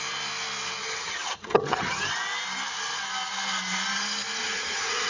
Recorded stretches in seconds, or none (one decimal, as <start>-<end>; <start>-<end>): 0.0-0.8; 2.1-4.4